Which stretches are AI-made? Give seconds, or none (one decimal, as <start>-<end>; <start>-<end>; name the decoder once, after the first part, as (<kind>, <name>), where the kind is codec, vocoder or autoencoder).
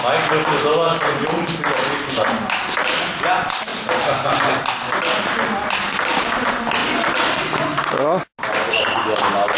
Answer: 3.7-4.6 (vocoder, BigVGAN v2)